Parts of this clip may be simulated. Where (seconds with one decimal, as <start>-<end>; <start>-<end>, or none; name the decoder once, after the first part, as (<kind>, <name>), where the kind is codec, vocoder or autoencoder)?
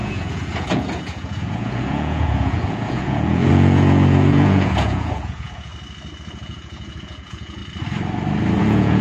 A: 0.0-5.7 (vocoder, Vocos); 6.3-7.6; 8.6-9.0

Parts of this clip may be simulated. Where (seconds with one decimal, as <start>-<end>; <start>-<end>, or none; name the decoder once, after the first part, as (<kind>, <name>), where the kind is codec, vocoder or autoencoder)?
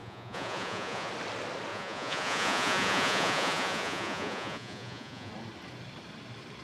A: 0.0-1.1 (vocoder, Vocos); 1.7-5.3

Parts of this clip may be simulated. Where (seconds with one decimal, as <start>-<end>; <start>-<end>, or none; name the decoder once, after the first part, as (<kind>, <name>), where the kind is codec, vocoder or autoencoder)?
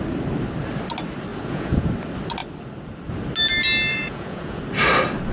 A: 1.3-1.9 (vocoder, Vocos); 3.9-4.6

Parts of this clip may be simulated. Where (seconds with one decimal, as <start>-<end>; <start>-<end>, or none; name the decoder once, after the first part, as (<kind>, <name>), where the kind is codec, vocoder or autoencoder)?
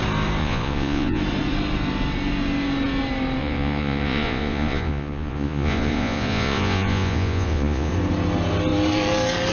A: 0.4-1.2 (vocoder, Vocos); 3.4-7.9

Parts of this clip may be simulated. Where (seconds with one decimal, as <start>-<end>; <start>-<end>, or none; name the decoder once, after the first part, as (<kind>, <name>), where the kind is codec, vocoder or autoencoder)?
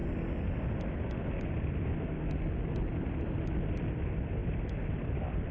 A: none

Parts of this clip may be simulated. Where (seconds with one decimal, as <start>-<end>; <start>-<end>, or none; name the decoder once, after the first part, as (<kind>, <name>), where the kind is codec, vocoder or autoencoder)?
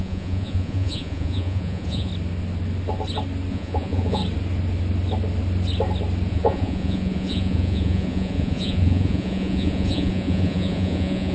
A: 0.0-2.1 (vocoder, Vocos); 3.5-4.2; 6.3-11.3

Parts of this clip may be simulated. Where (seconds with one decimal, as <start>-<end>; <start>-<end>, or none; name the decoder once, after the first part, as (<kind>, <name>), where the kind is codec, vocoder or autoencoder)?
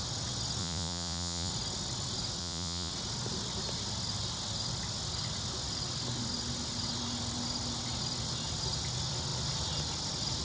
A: 0.6-1.5 (vocoder, Vocos); 2.4-2.9